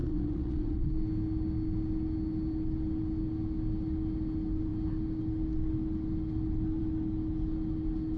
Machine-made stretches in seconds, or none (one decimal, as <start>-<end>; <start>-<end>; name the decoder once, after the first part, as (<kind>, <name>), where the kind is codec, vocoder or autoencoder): 0.0-0.9 (vocoder, WaveNeXt)